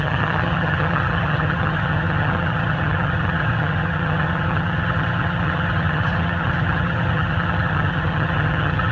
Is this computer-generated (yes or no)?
yes